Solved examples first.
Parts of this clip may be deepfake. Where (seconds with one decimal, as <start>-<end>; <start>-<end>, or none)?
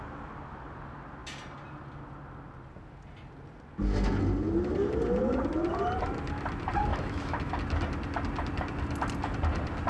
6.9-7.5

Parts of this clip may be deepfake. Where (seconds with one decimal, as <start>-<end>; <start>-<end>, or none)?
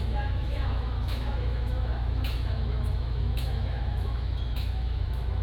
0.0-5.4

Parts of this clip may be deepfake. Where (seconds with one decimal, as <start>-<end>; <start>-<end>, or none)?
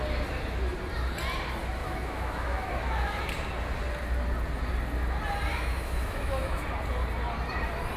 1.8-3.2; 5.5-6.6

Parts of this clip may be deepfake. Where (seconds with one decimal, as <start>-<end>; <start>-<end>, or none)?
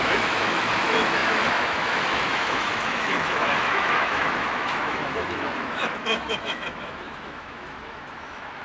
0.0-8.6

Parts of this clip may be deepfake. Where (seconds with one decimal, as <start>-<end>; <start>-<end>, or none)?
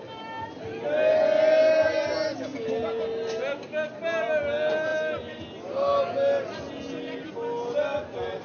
none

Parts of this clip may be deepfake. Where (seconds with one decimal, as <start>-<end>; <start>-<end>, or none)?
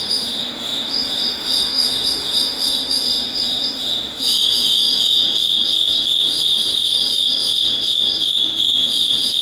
0.0-9.4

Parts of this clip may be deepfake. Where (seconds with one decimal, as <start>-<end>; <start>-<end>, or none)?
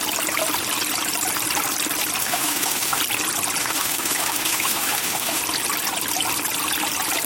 2.2-3.0; 3.6-5.4